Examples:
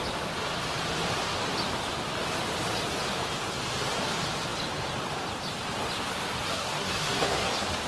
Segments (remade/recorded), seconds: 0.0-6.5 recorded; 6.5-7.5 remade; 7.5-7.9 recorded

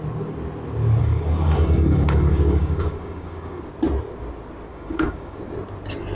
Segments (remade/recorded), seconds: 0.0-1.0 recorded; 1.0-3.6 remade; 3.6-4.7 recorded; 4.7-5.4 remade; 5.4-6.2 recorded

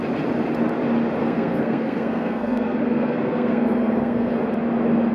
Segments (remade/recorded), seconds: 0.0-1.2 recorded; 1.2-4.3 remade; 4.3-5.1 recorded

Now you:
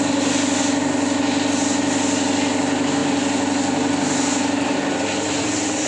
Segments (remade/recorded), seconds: 0.0-5.9 recorded

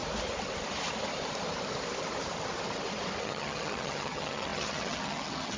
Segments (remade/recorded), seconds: 0.0-3.2 recorded; 3.2-5.6 remade

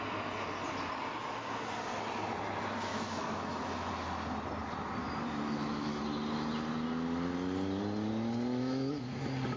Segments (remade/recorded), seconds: 0.0-2.9 recorded; 2.9-3.9 remade; 3.9-5.0 recorded; 5.0-6.0 remade; 6.0-8.5 recorded; 8.5-9.2 remade; 9.2-9.6 recorded